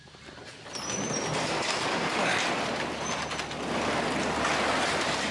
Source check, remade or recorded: recorded